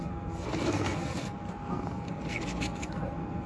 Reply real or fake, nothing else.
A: fake